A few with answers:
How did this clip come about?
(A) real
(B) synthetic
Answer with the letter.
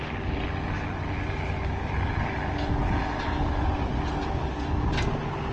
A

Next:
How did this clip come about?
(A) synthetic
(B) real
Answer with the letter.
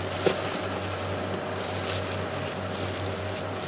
B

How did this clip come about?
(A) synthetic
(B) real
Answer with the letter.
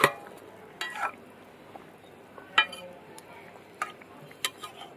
B